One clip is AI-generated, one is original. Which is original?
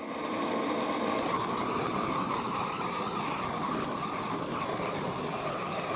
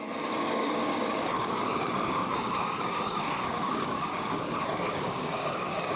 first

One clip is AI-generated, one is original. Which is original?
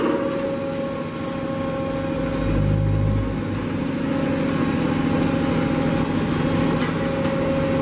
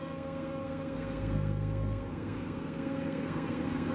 first